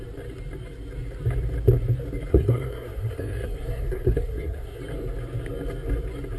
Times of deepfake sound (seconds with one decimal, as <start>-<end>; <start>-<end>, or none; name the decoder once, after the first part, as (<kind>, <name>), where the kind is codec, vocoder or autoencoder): 2.3-4.8 (codec, SNAC)